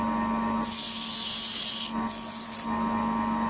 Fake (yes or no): no